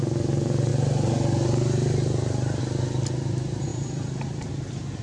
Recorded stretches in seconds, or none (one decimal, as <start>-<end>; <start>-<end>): 0.0-3.7; 4.5-5.0